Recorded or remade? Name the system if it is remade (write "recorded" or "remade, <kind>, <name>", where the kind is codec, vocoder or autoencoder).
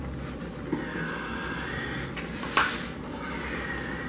recorded